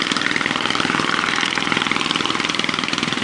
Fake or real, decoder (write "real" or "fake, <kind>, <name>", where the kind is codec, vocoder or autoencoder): fake, vocoder, BigVGAN v2